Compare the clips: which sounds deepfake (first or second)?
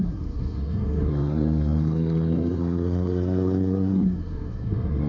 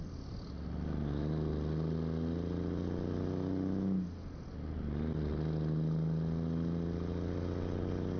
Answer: first